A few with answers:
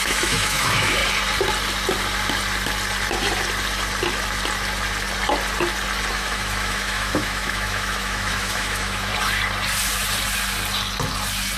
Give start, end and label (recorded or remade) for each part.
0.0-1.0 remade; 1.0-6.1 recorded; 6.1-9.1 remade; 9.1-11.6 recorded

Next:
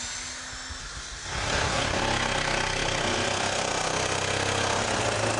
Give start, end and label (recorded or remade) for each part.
0.0-0.8 recorded; 0.8-2.0 remade; 2.0-5.4 recorded

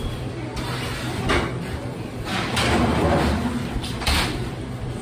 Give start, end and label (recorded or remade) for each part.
0.0-0.5 remade; 0.5-1.6 recorded; 1.6-2.3 remade; 2.3-2.8 recorded; 2.8-5.0 remade

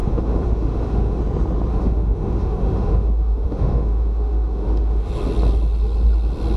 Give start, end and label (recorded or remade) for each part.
0.0-1.2 remade; 1.2-1.7 recorded; 1.7-5.1 remade; 5.1-6.6 recorded

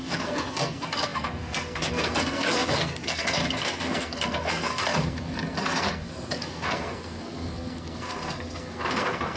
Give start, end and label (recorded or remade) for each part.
0.0-9.4 remade

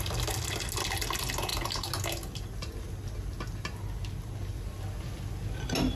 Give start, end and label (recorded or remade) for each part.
0.0-6.0 recorded